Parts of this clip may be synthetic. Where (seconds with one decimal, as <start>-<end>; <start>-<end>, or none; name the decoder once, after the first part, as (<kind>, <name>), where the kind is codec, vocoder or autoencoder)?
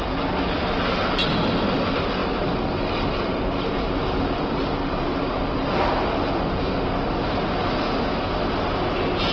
2.2-6.3 (vocoder, BigVGAN v2)